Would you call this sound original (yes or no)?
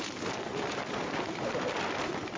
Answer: no